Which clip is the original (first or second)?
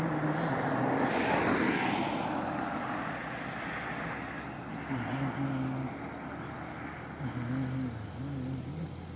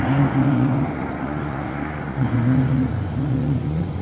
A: first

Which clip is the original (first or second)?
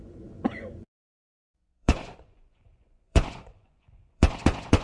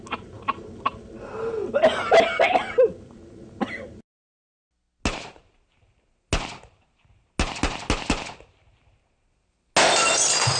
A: second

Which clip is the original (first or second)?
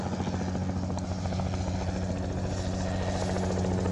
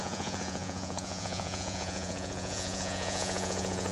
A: first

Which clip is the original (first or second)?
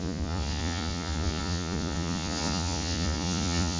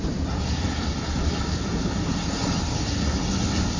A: second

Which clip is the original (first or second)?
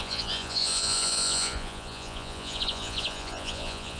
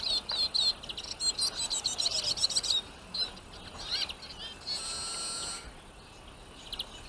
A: second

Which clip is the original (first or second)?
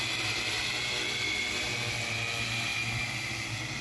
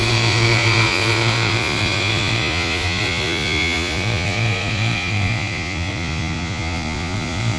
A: first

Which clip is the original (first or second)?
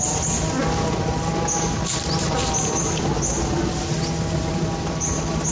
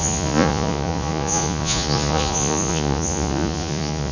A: first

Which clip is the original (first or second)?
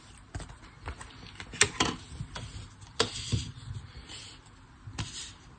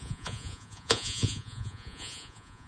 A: first